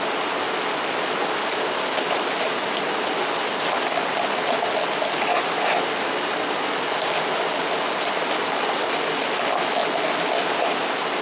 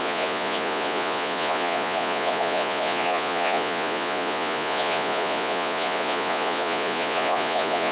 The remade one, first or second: second